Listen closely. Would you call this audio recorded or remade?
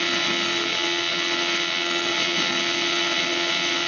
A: remade